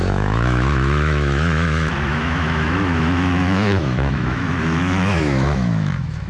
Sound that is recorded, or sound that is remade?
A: remade